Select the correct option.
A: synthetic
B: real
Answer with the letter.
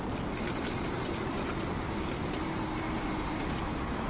B